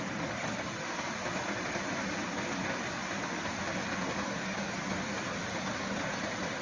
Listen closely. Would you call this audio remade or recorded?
remade